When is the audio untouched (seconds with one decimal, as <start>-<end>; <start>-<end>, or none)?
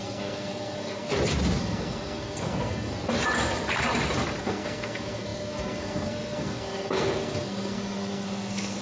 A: 1.1-1.6; 2.9-4.4